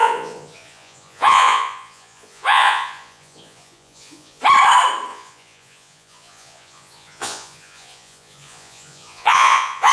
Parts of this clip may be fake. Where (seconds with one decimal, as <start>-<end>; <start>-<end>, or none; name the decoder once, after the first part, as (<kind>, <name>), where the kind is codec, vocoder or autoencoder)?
0.0-4.4 (vocoder, Vocos); 5.1-9.9